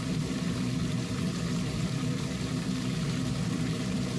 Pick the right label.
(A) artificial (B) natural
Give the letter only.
A